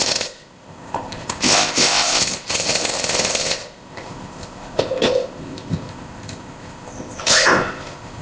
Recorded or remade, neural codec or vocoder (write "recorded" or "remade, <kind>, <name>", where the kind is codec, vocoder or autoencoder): remade, codec, ZipCodec